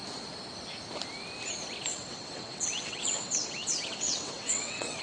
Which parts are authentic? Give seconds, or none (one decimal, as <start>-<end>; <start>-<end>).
0.0-1.9